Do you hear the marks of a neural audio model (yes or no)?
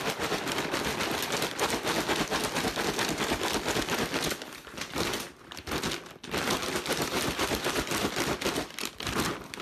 no